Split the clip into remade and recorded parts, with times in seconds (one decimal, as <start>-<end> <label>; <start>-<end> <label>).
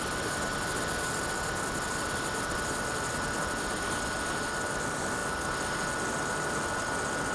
0.0-7.3 recorded